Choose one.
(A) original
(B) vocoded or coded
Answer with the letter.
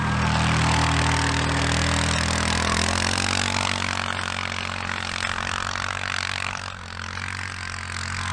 A